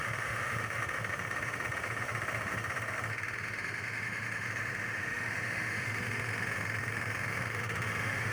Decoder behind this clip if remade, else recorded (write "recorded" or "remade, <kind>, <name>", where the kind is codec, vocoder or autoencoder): remade, autoencoder, DAC-VAE